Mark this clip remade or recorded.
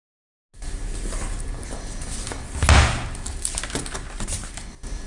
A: recorded